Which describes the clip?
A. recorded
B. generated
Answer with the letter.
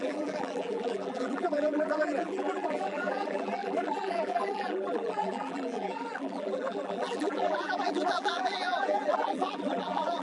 B